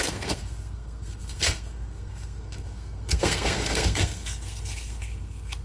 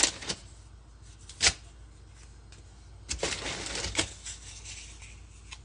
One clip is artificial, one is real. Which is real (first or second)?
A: second